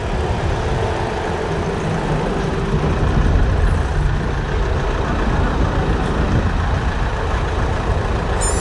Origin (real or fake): real